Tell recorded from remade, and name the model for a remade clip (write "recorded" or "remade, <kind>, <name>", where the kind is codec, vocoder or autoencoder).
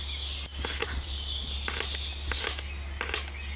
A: recorded